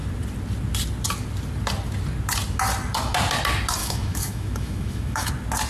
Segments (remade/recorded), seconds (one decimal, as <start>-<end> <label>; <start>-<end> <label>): 0.0-3.8 recorded; 3.8-5.3 remade; 5.3-5.7 recorded